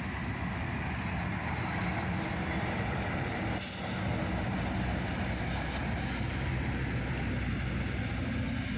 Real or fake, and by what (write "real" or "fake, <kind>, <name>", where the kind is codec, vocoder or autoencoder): real